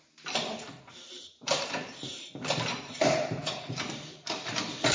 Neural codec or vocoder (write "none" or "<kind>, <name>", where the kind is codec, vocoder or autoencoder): vocoder, BigVGAN v2